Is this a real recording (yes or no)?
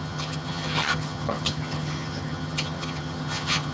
no